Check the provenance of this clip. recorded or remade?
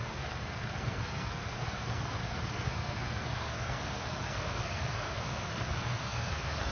remade